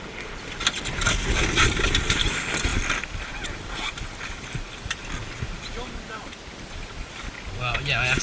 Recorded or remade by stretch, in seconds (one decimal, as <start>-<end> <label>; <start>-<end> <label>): 0.0-8.2 recorded

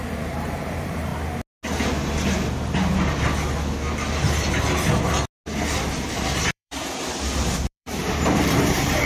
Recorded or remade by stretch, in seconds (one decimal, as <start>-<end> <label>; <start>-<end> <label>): 0.0-1.1 remade; 1.1-6.1 recorded; 6.1-9.1 remade